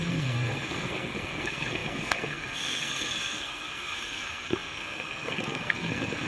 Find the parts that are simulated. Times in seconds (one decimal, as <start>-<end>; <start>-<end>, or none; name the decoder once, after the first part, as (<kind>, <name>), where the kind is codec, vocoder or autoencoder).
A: 0.0-6.3 (codec, SNAC)